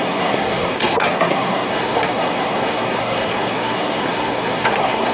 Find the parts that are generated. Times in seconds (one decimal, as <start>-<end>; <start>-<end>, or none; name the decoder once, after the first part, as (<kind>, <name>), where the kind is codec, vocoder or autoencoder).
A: 0.0-5.1 (codec, SNAC)